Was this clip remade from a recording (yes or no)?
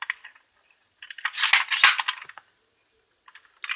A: no